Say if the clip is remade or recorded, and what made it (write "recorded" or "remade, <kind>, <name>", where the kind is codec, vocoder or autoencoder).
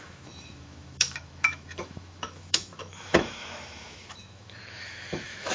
remade, autoencoder, DAC-VAE